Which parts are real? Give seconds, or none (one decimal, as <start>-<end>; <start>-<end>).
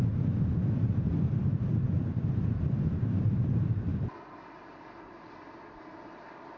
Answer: 0.0-6.6